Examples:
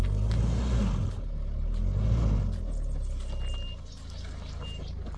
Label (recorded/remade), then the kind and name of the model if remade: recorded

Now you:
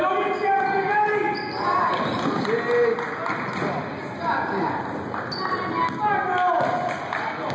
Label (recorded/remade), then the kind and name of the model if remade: recorded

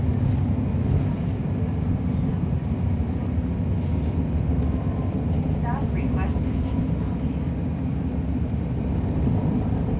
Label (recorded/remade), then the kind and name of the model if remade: recorded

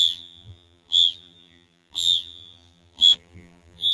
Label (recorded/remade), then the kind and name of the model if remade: remade, vocoder, BigVGAN v2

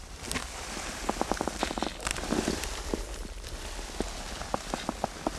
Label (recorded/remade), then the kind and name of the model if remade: remade, vocoder, BigVGAN v2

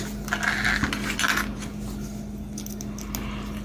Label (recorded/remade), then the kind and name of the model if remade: recorded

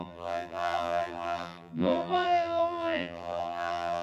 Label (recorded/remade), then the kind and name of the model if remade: remade, vocoder, BigVGAN v2